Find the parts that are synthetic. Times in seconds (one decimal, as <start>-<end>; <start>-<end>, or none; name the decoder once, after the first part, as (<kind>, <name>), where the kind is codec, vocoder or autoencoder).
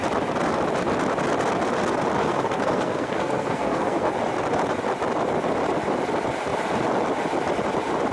2.2-4.2 (codec, SNAC)